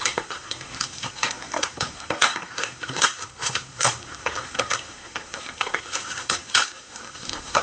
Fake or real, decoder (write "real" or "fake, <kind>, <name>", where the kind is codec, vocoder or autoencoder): fake, codec, SNAC